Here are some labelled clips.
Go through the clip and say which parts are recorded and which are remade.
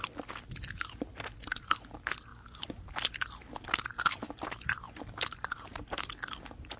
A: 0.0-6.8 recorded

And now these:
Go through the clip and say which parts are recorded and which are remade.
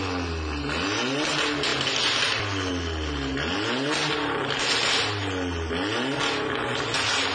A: 0.0-7.3 recorded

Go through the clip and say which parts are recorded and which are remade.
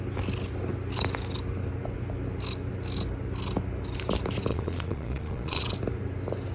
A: 0.0-4.5 recorded; 4.5-5.6 remade; 5.6-6.5 recorded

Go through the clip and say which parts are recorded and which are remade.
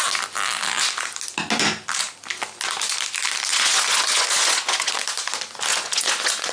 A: 0.0-3.5 recorded; 3.5-4.9 remade; 4.9-5.7 recorded; 5.7-6.5 remade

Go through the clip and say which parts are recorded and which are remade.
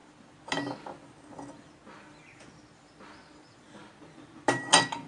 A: 0.0-5.1 recorded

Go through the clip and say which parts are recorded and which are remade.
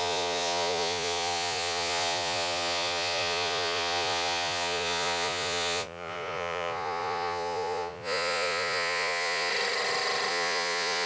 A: 0.0-9.5 remade; 9.5-10.3 recorded; 10.3-11.1 remade